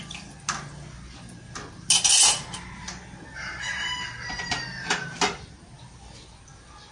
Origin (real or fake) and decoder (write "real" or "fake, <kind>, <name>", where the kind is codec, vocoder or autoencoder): real